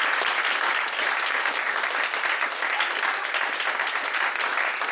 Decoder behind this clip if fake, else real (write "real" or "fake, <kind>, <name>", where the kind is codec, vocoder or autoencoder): real